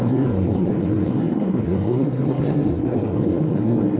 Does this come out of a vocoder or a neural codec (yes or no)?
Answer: yes